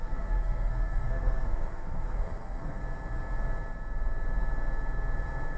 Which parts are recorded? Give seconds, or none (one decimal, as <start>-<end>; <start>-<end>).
2.8-5.6